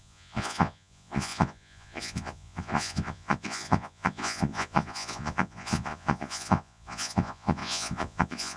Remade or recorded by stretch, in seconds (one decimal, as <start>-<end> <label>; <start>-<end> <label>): 0.0-8.6 remade